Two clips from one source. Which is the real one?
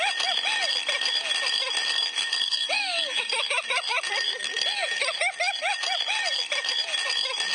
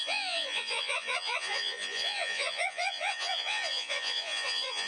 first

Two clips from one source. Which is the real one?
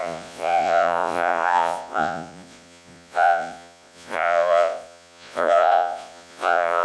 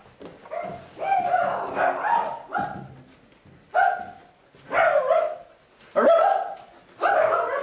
second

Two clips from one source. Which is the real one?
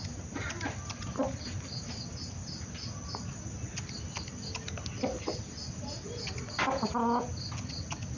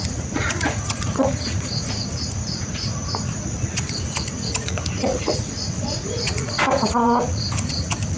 first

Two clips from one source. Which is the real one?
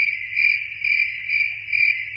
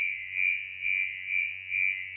first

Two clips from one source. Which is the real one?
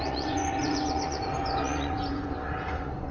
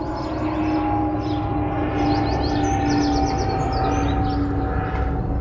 second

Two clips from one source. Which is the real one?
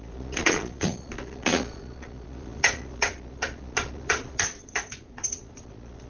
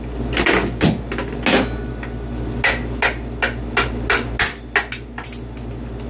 second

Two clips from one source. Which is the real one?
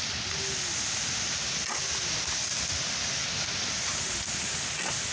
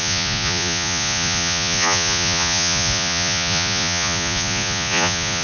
first